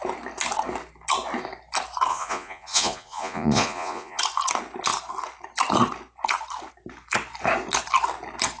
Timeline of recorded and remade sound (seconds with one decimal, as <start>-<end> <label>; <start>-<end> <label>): 0.0-2.1 recorded; 2.1-4.2 remade; 4.2-8.6 recorded